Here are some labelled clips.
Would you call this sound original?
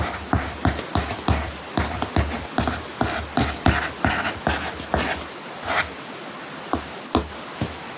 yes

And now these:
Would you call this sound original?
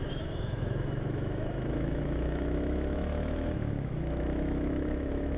no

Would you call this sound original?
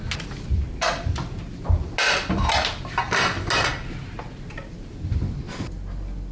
yes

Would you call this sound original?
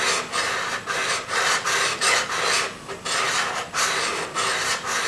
yes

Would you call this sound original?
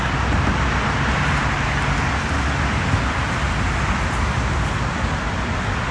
yes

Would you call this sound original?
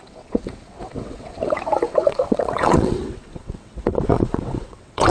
no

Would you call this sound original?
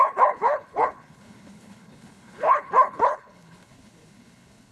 no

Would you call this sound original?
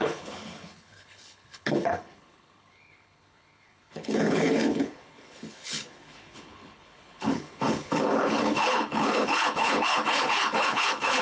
no